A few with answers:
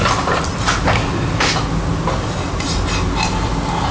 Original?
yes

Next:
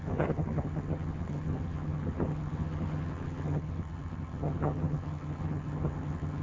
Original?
no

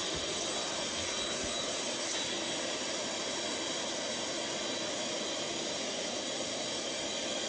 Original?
yes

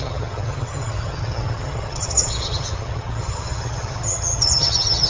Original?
no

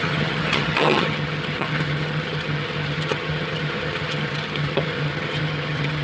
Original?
no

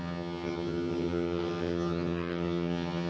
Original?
no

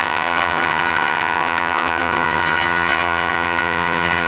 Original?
no